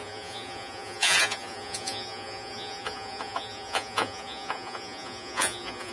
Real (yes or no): no